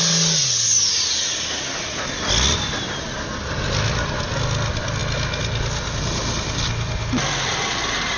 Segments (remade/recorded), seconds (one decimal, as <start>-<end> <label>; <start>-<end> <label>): 0.0-8.2 recorded